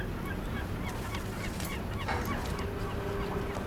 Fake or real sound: real